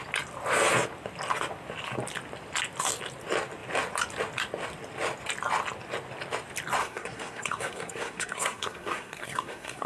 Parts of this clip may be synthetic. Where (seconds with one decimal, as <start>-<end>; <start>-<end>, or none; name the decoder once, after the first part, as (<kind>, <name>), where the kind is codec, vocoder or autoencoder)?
6.8-9.9 (codec, SNAC)